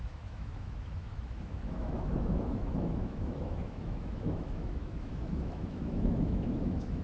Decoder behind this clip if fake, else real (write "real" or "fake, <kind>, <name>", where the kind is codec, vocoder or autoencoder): fake, autoencoder, DAC-VAE